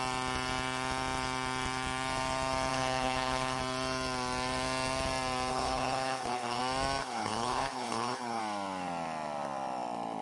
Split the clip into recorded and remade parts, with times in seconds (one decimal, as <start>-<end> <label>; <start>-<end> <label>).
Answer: 0.0-2.7 recorded; 2.7-3.6 remade; 3.6-5.5 recorded; 5.5-6.6 remade; 6.6-7.0 recorded; 7.0-8.4 remade; 8.4-10.2 recorded